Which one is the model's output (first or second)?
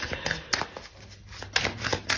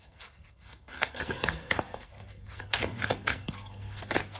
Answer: second